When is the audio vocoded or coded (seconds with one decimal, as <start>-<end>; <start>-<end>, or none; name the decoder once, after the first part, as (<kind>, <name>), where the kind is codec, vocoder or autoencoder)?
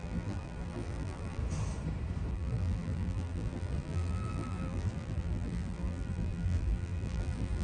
0.0-1.4 (vocoder, BigVGAN v2); 2.3-7.6